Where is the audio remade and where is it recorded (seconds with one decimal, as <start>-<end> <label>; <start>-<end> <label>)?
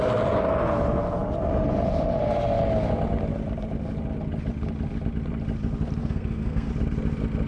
0.0-6.0 recorded; 6.0-6.7 remade; 6.7-7.5 recorded